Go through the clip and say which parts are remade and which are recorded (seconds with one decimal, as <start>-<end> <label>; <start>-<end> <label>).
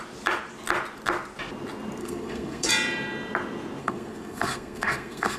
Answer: 0.0-2.0 recorded; 2.0-2.7 remade; 2.7-3.8 recorded; 3.8-5.4 remade